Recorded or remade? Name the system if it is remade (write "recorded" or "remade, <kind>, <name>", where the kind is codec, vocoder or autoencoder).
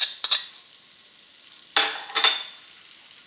recorded